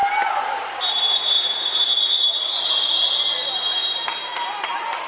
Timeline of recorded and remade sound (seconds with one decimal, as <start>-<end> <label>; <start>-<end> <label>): 0.0-5.1 recorded